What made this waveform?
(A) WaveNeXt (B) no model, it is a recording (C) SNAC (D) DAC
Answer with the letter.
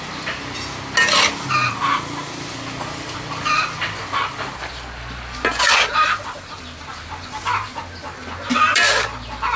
B